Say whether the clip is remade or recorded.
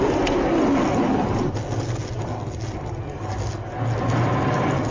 recorded